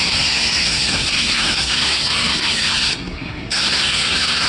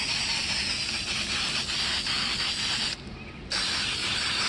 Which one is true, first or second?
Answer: second